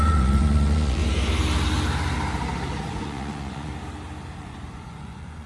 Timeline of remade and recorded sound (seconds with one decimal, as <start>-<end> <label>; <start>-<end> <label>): 0.0-1.0 remade; 1.0-2.8 recorded; 2.8-3.7 remade; 3.7-4.4 recorded; 4.4-5.5 remade